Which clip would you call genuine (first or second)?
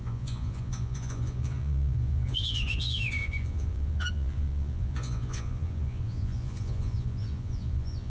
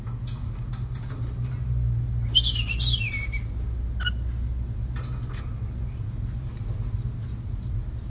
second